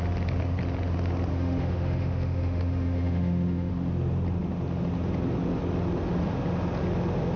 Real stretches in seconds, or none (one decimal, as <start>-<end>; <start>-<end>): 0.0-1.3; 3.7-7.4